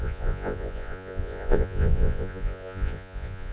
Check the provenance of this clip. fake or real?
fake